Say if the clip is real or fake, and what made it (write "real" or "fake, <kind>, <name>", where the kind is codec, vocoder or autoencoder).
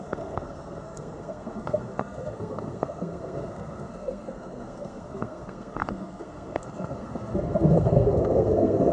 fake, codec, SNAC